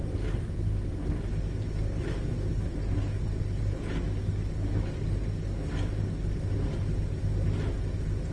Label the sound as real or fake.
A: real